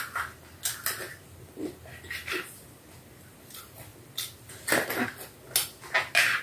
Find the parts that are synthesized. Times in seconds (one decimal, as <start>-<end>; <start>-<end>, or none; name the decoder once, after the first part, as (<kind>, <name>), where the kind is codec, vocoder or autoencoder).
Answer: none